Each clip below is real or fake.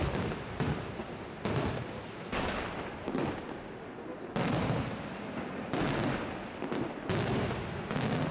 real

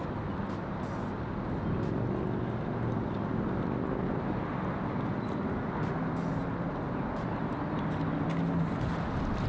real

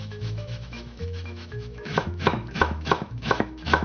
fake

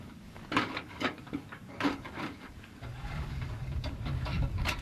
fake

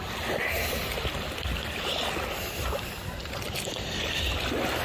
real